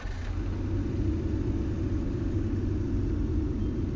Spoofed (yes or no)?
no